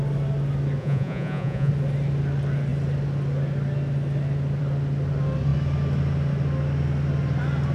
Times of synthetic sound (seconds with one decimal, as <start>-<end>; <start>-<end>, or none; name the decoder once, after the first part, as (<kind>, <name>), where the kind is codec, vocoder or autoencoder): 0.8-1.7 (vocoder, Vocos)